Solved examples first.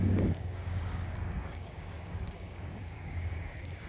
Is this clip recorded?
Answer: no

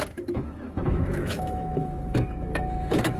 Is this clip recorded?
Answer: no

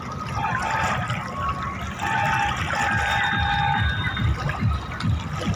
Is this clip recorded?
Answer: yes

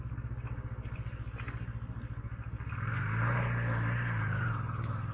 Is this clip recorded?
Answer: yes